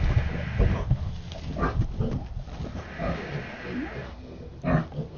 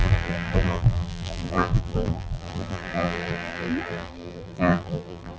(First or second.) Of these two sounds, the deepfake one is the second